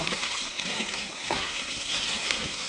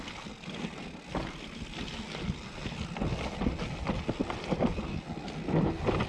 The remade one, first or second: first